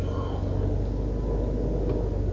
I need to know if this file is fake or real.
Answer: real